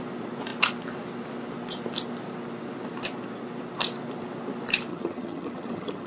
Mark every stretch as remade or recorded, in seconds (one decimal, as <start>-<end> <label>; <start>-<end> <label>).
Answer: 0.0-4.9 recorded; 4.9-6.1 remade

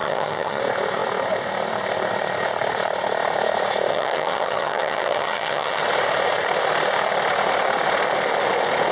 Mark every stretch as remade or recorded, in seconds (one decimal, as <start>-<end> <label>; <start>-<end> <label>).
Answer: 0.0-0.6 remade; 0.6-3.9 recorded; 3.9-5.8 remade; 5.8-8.9 recorded

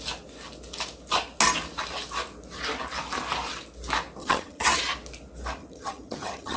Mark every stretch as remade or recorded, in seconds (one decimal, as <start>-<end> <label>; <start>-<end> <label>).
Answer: 0.0-4.2 recorded; 4.2-4.8 remade; 4.8-5.6 recorded; 5.6-6.6 remade

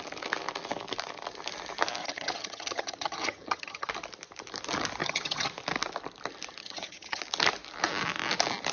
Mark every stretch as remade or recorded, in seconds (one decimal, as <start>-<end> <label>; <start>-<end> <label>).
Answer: 0.0-2.0 recorded; 2.0-3.9 remade; 3.9-5.0 recorded; 5.0-5.5 remade; 5.5-6.6 recorded; 6.6-7.2 remade; 7.2-8.7 recorded

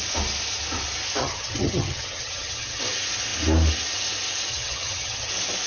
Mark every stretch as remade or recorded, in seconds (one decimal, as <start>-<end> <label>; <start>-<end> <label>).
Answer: 0.0-1.2 recorded; 1.2-2.8 remade; 2.8-4.5 recorded; 4.5-5.3 remade; 5.3-5.7 recorded

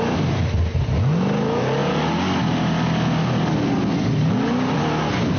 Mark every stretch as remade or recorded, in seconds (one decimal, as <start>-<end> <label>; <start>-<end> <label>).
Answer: 0.0-5.4 recorded

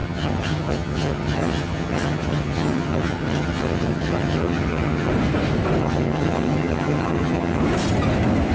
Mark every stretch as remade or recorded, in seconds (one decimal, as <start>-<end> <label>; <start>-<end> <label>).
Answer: 0.0-5.1 remade; 5.1-5.8 recorded; 5.8-7.6 remade; 7.6-8.5 recorded

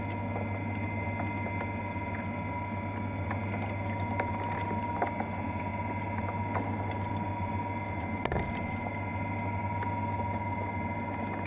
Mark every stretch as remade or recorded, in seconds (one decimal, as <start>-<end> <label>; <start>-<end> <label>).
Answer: 0.0-11.5 recorded